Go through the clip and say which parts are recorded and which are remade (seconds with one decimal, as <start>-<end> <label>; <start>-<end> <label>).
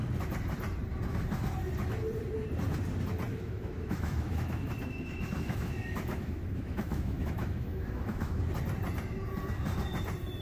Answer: 0.0-3.3 recorded; 3.3-8.4 remade; 8.4-10.4 recorded